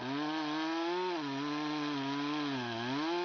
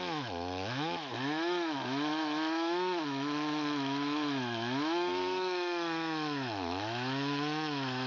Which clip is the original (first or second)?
first